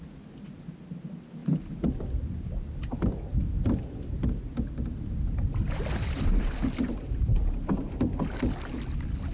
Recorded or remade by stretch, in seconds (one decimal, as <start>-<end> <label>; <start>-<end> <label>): 0.0-9.3 recorded